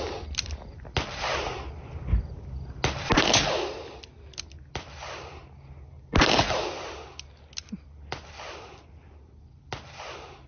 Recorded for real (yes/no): yes